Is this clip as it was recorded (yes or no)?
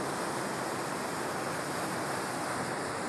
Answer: yes